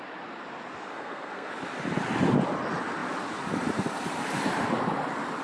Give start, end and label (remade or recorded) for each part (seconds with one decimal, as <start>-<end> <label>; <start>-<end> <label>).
0.0-0.9 recorded; 0.9-1.5 remade; 1.5-5.4 recorded